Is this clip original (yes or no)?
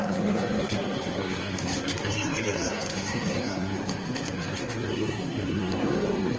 no